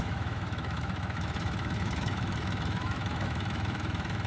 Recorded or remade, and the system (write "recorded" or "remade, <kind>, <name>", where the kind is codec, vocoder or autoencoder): remade, autoencoder, DAC-VAE